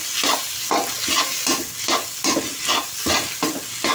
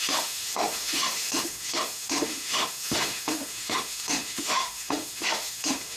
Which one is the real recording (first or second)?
first